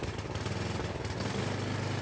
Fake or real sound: real